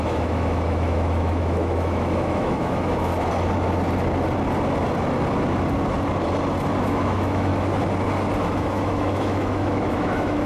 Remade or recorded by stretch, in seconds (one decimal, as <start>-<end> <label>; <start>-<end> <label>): 0.0-3.1 remade; 3.1-6.8 recorded; 6.8-7.5 remade; 7.5-8.4 recorded; 8.4-10.5 remade